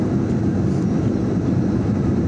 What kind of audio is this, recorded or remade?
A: recorded